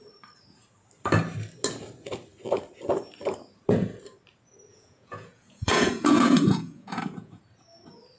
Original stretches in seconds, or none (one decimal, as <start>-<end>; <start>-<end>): 0.0-4.7; 7.4-8.2